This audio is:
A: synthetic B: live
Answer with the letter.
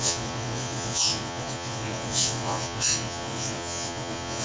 A